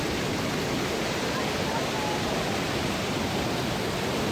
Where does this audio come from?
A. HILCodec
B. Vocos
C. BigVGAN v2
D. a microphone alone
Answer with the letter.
D